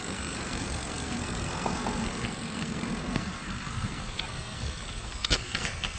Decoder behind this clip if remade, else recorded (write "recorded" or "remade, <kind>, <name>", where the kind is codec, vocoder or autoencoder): remade, codec, SNAC